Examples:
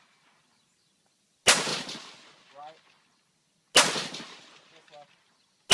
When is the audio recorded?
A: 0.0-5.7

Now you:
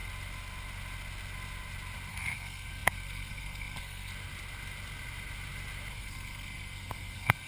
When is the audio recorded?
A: 0.0-2.1; 4.1-5.9